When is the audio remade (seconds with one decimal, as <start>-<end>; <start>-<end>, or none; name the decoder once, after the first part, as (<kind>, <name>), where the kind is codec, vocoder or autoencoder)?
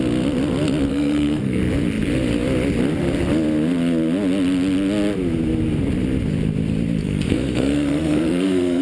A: 0.9-1.6 (codec, SNAC); 7.0-8.8